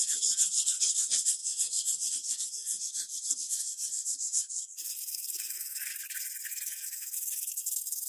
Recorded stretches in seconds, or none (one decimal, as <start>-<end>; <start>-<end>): 5.9-6.5